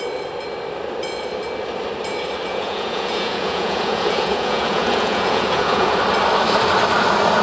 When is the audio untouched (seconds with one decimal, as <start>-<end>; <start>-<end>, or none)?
0.0-2.5; 5.9-7.4